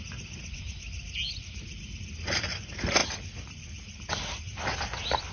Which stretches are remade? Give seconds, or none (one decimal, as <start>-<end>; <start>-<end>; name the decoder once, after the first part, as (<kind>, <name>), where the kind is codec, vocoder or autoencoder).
none

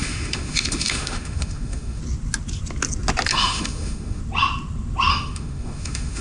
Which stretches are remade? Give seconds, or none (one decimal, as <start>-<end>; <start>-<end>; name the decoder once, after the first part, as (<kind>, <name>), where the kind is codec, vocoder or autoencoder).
0.0-2.0 (autoencoder, DAC-VAE); 3.3-4.2; 5.1-6.2

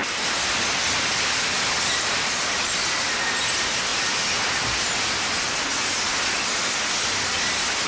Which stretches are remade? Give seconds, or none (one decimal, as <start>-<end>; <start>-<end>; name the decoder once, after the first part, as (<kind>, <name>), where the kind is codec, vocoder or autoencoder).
none

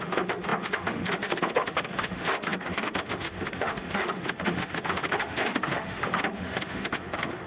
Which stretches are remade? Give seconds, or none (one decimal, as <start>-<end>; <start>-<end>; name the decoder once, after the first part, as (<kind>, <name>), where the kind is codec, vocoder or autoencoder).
0.0-7.5 (autoencoder, DAC-VAE)

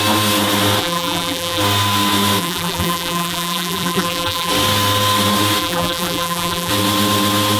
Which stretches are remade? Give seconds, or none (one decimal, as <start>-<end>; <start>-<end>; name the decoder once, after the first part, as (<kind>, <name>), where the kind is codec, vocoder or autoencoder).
0.8-1.6 (vocoder, BigVGAN v2); 2.4-4.5; 5.6-6.7

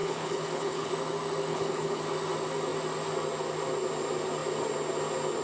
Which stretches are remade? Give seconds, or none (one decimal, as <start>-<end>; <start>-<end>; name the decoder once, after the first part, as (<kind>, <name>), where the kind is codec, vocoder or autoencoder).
0.0-0.9 (codec, HILCodec); 1.5-2.0